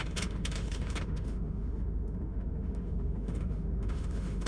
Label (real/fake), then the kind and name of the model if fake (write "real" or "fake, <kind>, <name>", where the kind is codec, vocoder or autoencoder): fake, autoencoder, DAC-VAE